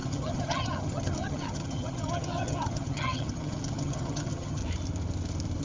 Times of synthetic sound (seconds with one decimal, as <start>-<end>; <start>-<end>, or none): 0.0-4.6